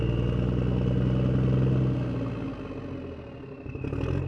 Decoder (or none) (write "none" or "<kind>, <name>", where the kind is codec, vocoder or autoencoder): none